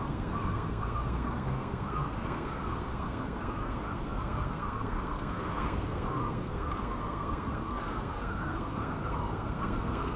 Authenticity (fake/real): fake